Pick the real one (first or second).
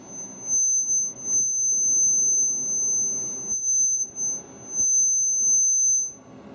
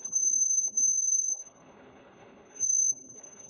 first